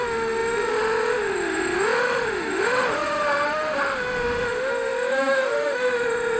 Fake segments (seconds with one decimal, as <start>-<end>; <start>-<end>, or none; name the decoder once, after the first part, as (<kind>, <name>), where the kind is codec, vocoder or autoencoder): 0.0-6.4 (autoencoder, DAC-VAE)